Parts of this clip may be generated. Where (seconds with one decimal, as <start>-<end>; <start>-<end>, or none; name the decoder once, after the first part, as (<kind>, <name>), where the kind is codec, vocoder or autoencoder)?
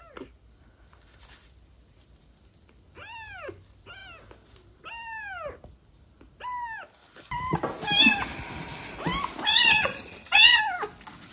9.5-10.6 (vocoder, HiFi-GAN)